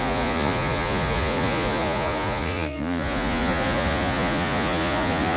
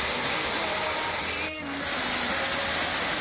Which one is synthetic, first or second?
first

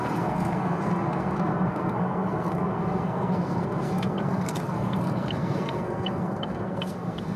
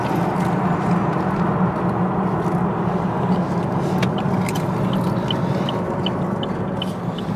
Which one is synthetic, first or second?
first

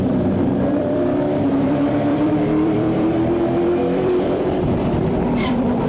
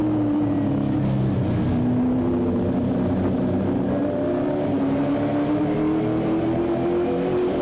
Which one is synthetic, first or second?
first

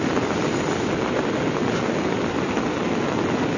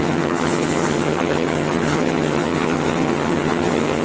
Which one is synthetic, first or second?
second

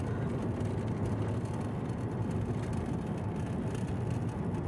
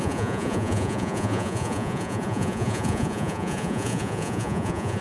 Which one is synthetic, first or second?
second